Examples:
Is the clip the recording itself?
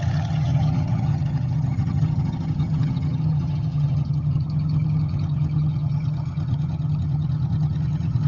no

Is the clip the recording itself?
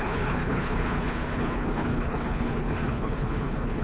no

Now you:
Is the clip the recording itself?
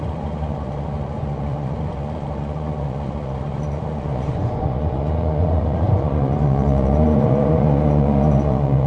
no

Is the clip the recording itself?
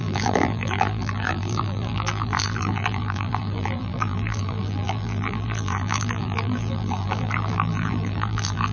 no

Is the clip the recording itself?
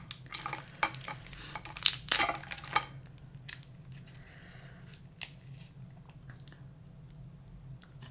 yes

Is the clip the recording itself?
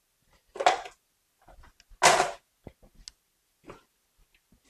yes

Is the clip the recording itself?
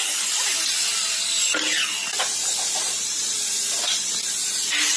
yes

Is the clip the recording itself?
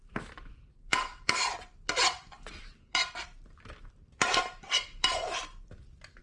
no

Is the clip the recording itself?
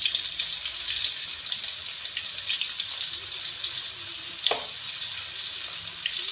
yes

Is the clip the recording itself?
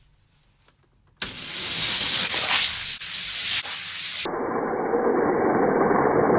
yes